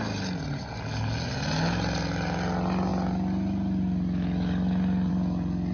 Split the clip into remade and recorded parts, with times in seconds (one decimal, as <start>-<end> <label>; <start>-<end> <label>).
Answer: 0.0-5.7 recorded